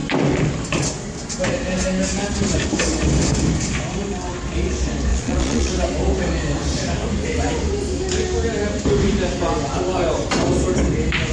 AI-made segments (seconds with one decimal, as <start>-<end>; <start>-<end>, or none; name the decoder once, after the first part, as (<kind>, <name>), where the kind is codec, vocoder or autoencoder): 5.1-5.7 (vocoder, Vocos)